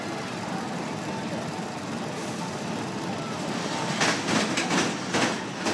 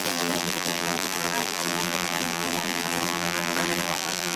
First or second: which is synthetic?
second